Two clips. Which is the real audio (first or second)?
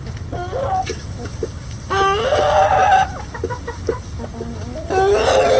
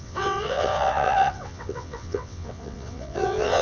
first